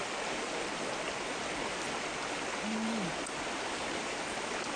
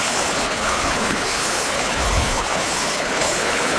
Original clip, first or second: first